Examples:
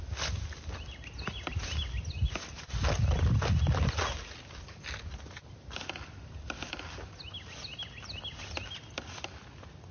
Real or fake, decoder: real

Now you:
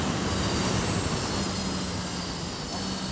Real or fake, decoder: real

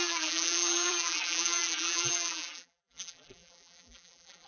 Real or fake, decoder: fake, vocoder, BigVGAN v2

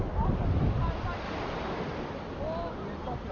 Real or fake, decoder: real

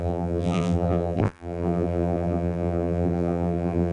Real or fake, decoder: fake, vocoder, BigVGAN v2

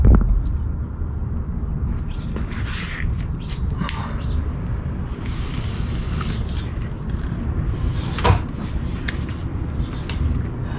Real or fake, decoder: real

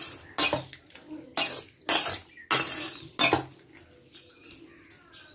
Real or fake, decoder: real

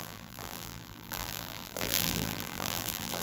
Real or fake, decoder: fake, vocoder, BigVGAN v2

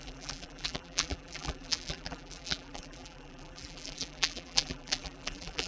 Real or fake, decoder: fake, vocoder, BigVGAN v2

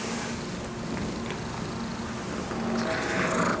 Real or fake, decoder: real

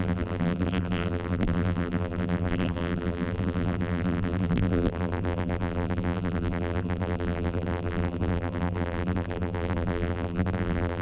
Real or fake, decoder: fake, vocoder, BigVGAN v2